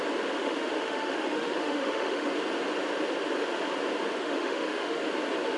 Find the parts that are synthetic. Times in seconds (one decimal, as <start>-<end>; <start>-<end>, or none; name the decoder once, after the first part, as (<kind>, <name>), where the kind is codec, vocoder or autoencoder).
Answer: 0.4-2.3 (autoencoder, DAC-VAE); 4.2-5.0